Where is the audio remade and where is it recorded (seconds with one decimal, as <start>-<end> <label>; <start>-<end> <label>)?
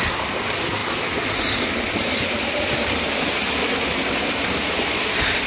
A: 0.0-5.5 recorded